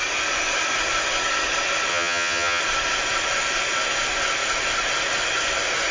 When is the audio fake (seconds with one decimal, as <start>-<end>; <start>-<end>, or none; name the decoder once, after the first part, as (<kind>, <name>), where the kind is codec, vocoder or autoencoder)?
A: 1.9-2.6 (vocoder, HiFi-GAN)